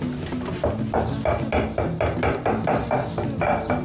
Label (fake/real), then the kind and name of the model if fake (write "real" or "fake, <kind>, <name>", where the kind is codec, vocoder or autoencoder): real